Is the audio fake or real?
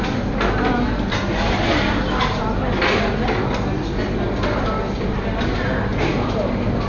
real